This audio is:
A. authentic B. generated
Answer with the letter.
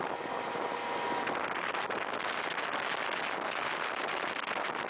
A